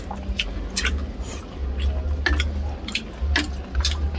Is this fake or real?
real